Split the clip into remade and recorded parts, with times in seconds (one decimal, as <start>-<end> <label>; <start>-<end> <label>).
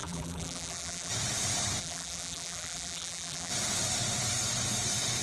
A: 0.0-1.1 remade; 1.1-1.8 recorded; 1.8-3.5 remade; 3.5-5.2 recorded